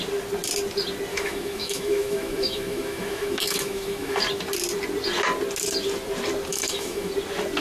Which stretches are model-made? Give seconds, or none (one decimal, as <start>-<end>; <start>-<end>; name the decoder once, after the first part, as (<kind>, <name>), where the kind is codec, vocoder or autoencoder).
1.1-4.2 (autoencoder, DAC-VAE); 6.5-7.1